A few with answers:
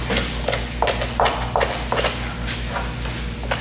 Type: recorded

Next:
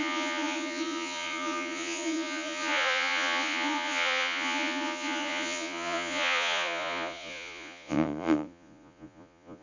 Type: remade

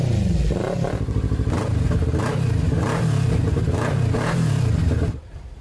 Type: recorded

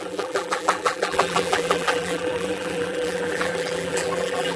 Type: remade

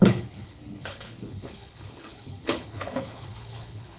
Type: remade